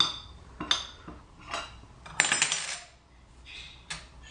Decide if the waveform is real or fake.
real